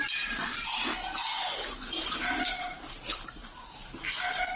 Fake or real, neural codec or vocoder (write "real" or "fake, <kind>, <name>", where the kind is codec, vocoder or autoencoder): fake, vocoder, BigVGAN v2